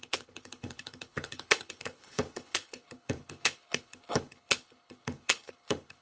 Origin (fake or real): fake